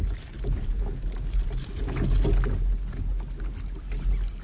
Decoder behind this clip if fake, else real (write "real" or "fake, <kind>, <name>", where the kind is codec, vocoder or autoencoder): real